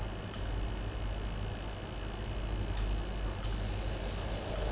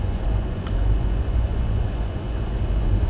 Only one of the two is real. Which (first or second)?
first